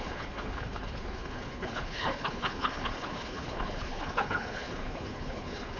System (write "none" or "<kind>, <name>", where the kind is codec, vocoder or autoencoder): codec, HILCodec